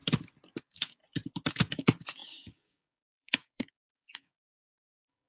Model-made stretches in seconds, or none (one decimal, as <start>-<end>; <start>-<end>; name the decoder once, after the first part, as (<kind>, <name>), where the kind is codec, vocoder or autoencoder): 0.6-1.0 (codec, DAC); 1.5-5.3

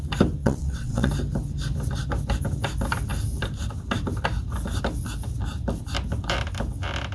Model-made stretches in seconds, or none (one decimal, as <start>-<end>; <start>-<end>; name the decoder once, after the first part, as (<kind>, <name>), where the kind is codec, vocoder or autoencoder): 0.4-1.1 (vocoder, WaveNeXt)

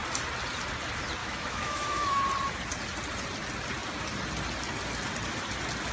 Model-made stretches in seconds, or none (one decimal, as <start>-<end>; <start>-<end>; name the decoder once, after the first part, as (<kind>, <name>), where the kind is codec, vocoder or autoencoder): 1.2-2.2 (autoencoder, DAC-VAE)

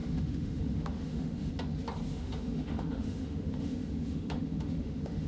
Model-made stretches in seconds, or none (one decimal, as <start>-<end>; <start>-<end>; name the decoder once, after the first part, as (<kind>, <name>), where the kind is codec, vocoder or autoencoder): 0.0-1.5 (autoencoder, DAC-VAE); 2.1-5.3

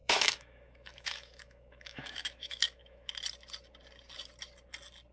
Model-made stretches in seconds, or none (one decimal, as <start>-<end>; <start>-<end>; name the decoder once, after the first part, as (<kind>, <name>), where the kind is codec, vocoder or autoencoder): 0.0-3.1 (autoencoder, DAC-VAE)

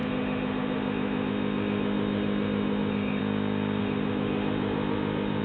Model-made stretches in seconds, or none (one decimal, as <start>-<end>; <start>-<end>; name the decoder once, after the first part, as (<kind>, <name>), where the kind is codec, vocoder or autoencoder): 0.0-3.2 (autoencoder, DAC-VAE); 3.8-5.4

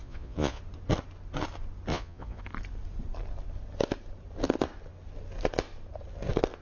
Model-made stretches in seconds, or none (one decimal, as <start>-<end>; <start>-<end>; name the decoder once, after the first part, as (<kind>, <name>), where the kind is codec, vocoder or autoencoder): 0.0-0.6 (vocoder, Vocos); 1.9-2.4